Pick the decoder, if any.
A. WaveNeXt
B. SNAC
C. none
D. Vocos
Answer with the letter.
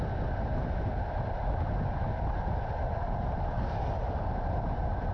C